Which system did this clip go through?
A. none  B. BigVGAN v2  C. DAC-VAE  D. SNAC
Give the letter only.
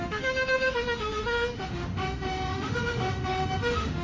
C